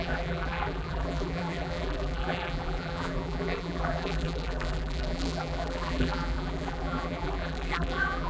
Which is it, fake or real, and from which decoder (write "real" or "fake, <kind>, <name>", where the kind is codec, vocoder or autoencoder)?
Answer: fake, vocoder, BigVGAN v2